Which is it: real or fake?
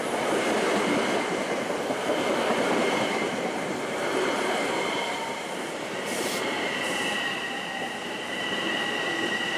fake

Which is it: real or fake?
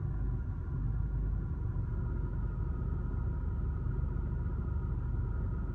real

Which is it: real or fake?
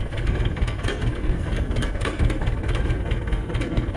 fake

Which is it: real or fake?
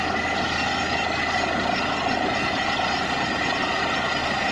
real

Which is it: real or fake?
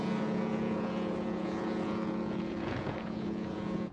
fake